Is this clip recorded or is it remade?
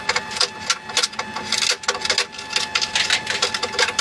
recorded